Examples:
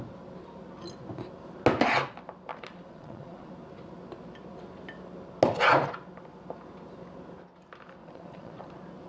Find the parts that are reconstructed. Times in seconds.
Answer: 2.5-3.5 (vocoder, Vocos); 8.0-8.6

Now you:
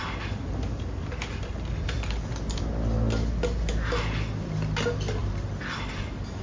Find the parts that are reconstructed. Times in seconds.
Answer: 5.2-5.9 (vocoder, BigVGAN v2)

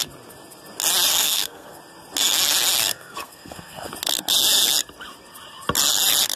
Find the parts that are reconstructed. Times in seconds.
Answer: 1.1-1.8 (codec, SNAC); 2.8-3.9

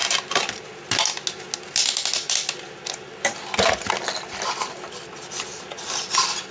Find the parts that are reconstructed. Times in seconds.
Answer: none

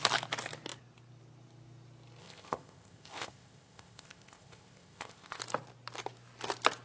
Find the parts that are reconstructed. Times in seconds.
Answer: 2.2-5.4 (codec, ZipCodec)

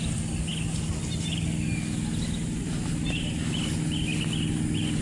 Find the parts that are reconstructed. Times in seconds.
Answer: none

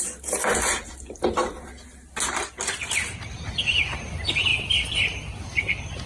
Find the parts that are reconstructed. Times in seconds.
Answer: none